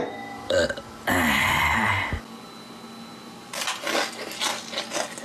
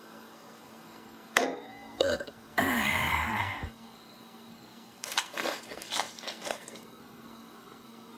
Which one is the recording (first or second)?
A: first